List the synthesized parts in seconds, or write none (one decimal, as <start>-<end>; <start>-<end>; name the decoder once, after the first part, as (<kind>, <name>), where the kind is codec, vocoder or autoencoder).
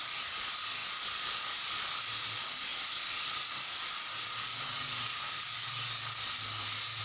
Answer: none